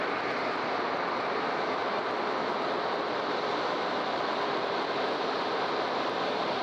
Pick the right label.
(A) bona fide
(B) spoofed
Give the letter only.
B